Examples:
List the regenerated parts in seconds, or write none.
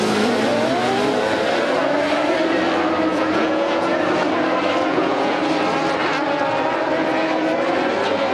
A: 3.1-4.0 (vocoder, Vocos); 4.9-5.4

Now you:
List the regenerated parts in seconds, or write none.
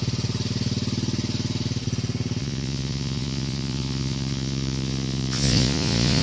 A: 2.4-6.2 (vocoder, Vocos)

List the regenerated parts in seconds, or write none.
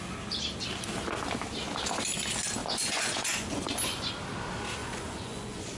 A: 2.6-4.1 (vocoder, Vocos); 4.8-5.8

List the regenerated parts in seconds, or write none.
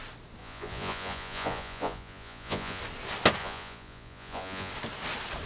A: 0.4-2.8 (vocoder, Vocos); 3.4-4.7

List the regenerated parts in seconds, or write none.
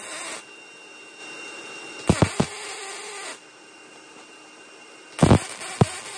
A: none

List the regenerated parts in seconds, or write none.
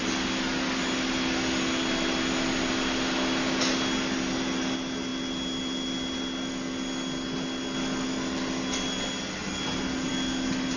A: none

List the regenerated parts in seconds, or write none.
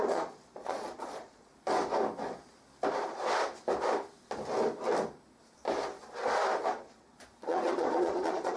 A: 0.0-1.5 (vocoder, Vocos); 6.7-8.6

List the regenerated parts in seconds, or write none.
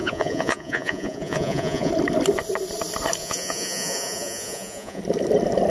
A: 0.0-1.9 (vocoder, Vocos); 3.2-5.0